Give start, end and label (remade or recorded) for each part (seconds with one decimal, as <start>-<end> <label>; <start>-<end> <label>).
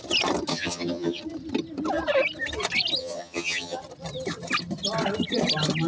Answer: 0.0-0.5 recorded; 0.5-1.2 remade; 1.2-3.0 recorded; 3.0-3.8 remade; 3.8-5.9 recorded